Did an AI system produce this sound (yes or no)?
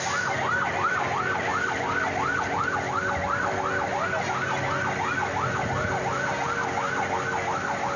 no